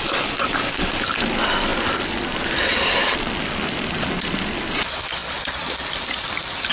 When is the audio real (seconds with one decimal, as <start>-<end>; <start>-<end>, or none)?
0.0-6.7